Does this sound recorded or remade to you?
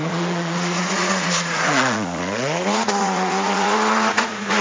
remade